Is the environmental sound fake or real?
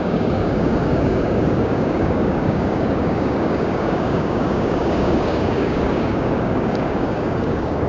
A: fake